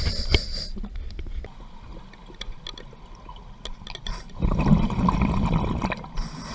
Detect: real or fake real